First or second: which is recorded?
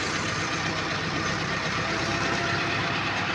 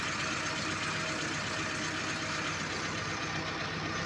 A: second